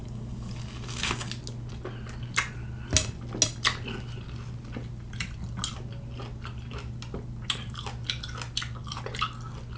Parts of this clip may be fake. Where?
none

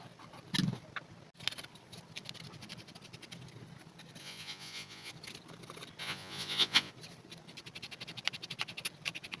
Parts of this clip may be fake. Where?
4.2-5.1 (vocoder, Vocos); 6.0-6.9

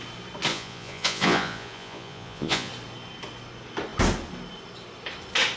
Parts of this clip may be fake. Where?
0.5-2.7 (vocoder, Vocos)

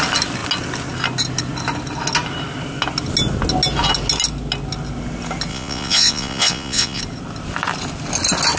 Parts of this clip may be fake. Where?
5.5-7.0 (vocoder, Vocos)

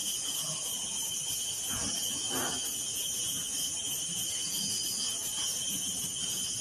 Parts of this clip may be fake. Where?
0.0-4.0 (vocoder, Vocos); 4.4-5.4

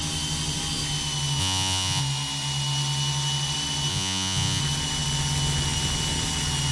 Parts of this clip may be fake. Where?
1.4-2.0 (vocoder, Vocos); 3.9-4.6

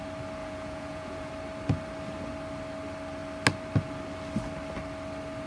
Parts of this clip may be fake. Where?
0.4-1.3 (vocoder, Vocos)

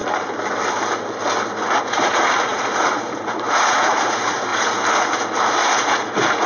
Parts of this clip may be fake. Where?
1.8-4.5 (vocoder, Vocos); 5.4-6.5